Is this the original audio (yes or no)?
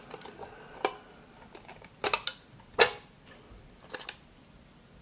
yes